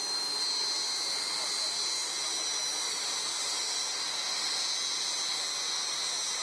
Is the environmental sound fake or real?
real